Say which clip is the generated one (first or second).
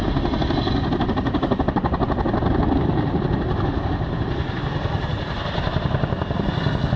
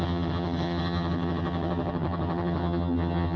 second